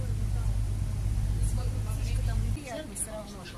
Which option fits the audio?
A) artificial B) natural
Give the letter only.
B